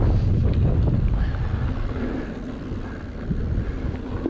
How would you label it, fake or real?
real